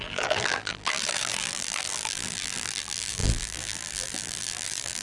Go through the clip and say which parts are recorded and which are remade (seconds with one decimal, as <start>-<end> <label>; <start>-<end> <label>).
0.0-5.0 remade